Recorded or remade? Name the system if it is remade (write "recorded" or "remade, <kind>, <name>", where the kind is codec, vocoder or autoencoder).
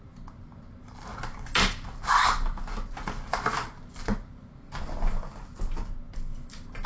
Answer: recorded